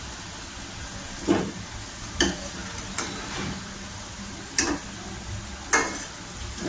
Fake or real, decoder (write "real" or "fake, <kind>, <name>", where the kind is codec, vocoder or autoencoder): real